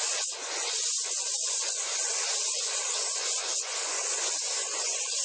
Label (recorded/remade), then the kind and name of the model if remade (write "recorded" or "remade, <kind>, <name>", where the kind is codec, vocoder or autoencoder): remade, vocoder, Vocos